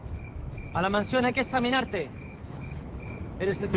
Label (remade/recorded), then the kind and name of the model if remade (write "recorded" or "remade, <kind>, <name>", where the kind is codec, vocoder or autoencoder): remade, autoencoder, DAC-VAE